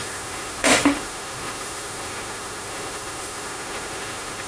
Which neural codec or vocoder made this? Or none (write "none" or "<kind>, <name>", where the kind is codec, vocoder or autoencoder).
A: autoencoder, DAC-VAE